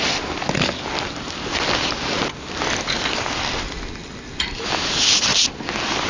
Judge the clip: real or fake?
real